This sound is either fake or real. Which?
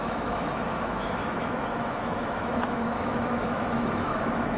fake